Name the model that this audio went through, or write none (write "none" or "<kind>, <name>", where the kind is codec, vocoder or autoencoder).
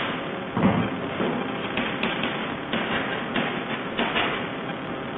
vocoder, BigVGAN v2